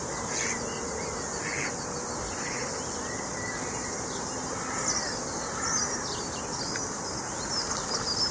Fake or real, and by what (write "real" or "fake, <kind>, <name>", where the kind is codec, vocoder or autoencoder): real